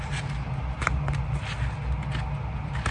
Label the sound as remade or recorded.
recorded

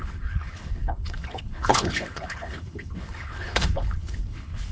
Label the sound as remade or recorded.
remade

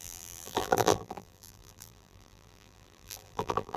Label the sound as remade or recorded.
remade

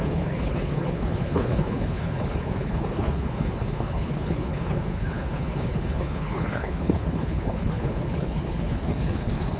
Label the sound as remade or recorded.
remade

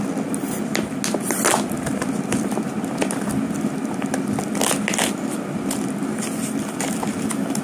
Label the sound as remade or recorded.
recorded